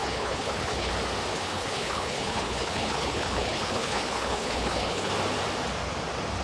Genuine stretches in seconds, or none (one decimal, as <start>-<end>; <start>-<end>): 0.9-1.3; 5.1-6.4